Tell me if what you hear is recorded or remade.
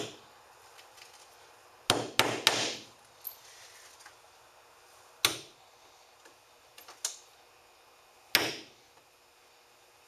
recorded